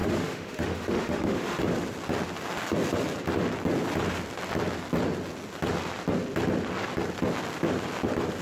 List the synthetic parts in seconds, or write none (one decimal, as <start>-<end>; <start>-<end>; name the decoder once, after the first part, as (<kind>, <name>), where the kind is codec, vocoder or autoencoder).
0.0-1.6 (autoencoder, DAC-VAE)